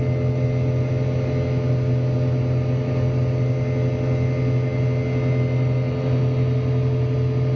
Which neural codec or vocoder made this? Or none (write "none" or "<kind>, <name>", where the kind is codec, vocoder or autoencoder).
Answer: none